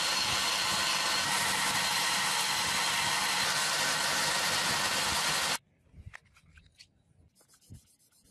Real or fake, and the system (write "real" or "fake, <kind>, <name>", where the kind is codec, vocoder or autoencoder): real